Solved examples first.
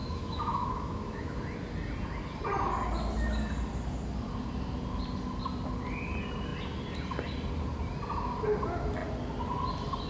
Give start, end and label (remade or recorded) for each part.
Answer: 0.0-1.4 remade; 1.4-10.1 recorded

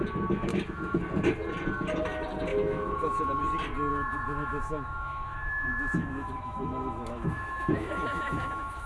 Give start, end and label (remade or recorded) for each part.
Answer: 0.0-0.5 recorded; 0.5-1.0 remade; 1.0-2.5 recorded; 2.5-3.4 remade; 3.4-3.9 recorded; 3.9-8.9 remade

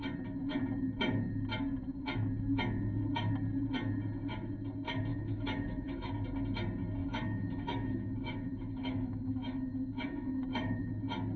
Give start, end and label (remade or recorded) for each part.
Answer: 0.0-5.1 recorded; 5.1-6.1 remade; 6.1-7.0 recorded; 7.0-10.9 remade; 10.9-11.4 recorded

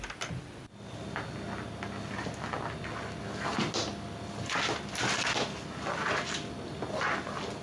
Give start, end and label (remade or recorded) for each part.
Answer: 0.0-7.6 recorded